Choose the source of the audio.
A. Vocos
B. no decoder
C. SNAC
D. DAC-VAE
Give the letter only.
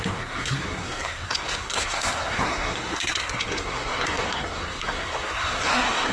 C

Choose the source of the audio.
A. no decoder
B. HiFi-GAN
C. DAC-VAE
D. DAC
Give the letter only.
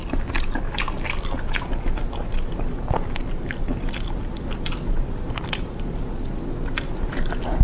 A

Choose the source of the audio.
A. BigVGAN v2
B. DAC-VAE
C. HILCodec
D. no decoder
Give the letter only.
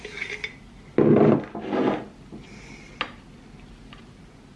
D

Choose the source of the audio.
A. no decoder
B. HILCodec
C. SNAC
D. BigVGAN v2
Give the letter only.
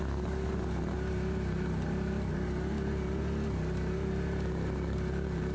A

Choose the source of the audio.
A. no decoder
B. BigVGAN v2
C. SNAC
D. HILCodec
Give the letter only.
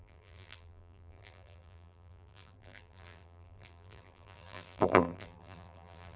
B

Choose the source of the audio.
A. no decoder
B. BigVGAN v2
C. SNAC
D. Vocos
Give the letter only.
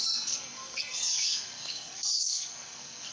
C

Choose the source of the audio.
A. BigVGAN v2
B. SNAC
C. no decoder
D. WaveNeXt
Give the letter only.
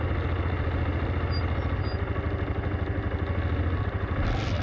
C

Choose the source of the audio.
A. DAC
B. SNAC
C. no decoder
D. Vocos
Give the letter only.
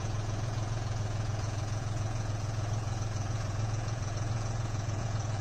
D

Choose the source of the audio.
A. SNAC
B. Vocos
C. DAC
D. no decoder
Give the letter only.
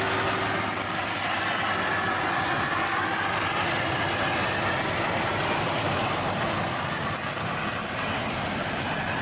D